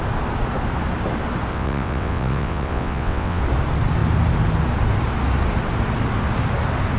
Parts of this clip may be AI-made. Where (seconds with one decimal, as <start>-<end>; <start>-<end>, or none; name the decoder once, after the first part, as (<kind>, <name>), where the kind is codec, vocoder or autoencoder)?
1.5-3.4 (vocoder, WaveNeXt)